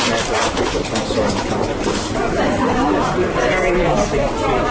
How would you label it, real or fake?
fake